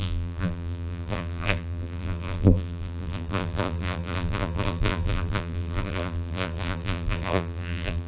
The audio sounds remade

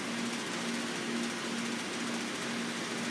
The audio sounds recorded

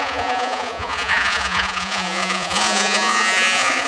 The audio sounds remade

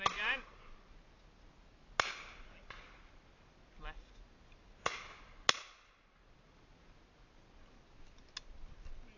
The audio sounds recorded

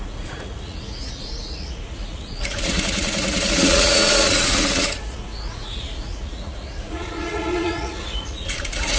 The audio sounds remade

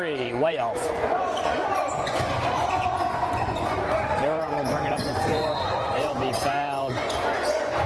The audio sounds remade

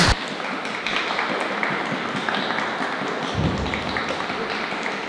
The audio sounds recorded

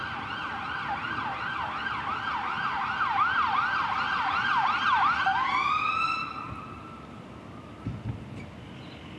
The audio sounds recorded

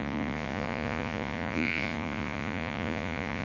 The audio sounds remade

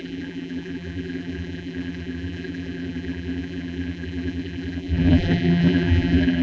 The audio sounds remade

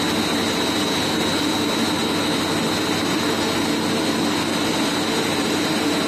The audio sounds recorded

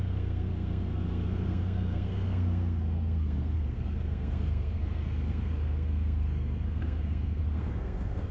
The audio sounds remade